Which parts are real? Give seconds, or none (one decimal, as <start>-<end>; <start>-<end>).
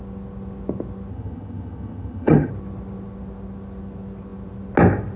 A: 0.0-1.1; 2.5-5.2